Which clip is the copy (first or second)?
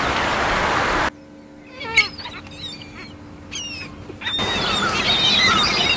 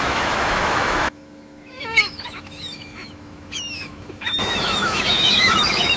second